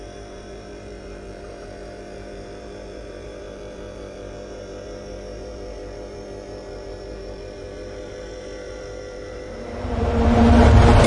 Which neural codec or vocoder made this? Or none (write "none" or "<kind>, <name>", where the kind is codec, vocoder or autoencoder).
vocoder, BigVGAN v2